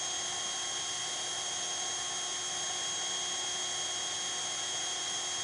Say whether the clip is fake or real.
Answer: real